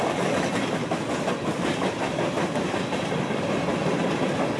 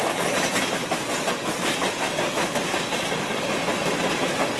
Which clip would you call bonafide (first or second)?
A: second